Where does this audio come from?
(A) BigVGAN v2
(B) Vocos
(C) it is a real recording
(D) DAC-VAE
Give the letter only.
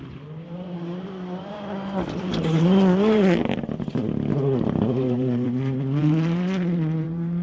A